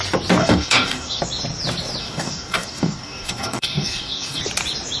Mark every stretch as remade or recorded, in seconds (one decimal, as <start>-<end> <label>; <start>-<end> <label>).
0.0-0.4 recorded; 0.4-1.2 remade; 1.2-2.0 recorded; 2.0-4.4 remade; 4.4-5.0 recorded